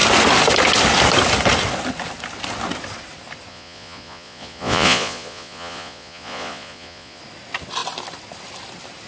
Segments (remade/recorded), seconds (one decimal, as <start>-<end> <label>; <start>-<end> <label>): 0.0-3.5 recorded; 3.5-7.2 remade; 7.2-9.1 recorded